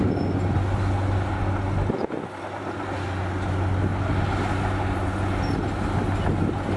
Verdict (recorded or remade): recorded